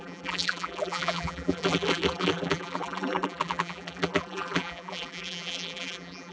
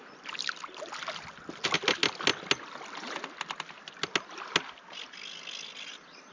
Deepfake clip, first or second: first